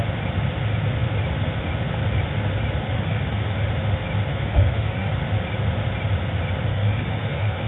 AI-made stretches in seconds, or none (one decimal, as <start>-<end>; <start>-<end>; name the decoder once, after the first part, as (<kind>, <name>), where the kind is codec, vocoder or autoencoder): 2.9-3.7 (autoencoder, DAC-VAE); 4.3-5.1; 6.7-7.7